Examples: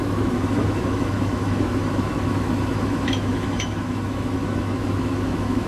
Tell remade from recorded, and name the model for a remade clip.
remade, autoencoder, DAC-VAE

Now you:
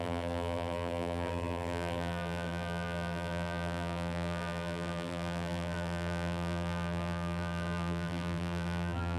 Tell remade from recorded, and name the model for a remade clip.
remade, vocoder, BigVGAN v2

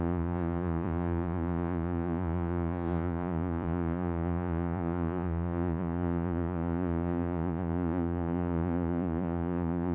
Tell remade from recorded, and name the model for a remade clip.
remade, vocoder, Vocos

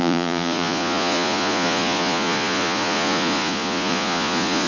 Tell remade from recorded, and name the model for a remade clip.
remade, vocoder, Vocos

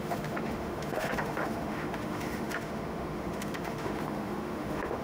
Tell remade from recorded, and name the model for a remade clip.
remade, autoencoder, DAC-VAE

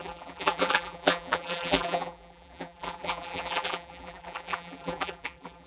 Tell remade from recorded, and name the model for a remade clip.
remade, vocoder, BigVGAN v2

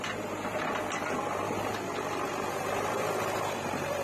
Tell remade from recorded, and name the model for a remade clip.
recorded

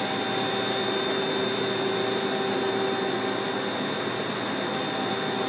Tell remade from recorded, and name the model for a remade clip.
recorded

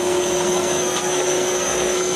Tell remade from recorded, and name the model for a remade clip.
remade, codec, SNAC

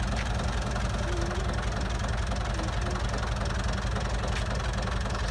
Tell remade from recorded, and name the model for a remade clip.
recorded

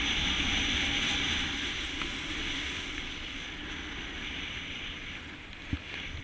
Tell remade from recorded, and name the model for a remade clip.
recorded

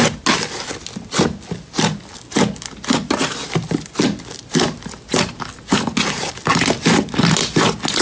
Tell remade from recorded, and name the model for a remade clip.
recorded